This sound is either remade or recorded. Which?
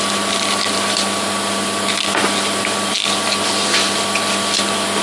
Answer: recorded